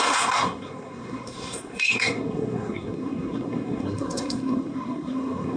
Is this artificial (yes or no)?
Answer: yes